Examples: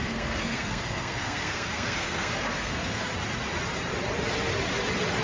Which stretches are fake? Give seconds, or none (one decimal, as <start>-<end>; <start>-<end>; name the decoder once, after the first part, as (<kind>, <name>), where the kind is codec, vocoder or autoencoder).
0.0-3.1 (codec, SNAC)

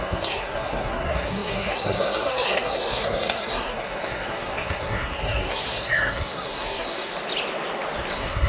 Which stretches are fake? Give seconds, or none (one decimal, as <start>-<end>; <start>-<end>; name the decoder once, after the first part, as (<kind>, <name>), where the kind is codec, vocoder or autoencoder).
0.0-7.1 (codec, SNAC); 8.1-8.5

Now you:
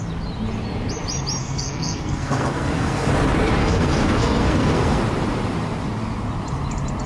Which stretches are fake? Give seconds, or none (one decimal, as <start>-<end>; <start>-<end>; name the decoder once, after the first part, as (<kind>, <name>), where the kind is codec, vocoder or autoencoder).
1.4-3.1 (codec, SNAC); 3.6-5.0

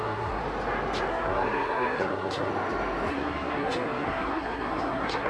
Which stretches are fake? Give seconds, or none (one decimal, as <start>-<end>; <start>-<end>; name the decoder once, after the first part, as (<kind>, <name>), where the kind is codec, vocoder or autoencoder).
0.0-0.4 (codec, SNAC); 1.1-2.5; 3.1-5.3

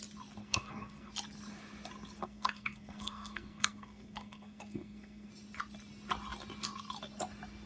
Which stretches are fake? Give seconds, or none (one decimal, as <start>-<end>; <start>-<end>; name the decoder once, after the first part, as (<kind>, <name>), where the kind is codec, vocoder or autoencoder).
0.4-1.1 (codec, SNAC); 2.2-5.3

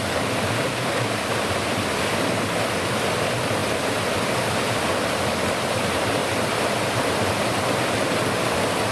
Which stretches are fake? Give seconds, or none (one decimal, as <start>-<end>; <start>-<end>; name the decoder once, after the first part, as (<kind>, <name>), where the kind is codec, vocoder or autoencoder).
none

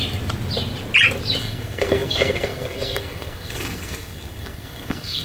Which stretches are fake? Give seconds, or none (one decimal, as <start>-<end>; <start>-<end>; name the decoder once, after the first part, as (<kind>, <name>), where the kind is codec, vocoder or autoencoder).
1.4-5.2 (codec, SNAC)

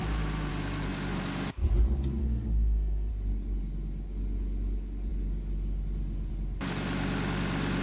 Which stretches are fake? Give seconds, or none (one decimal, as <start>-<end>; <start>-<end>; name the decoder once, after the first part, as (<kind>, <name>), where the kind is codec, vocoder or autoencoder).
2.2-3.1 (codec, SNAC)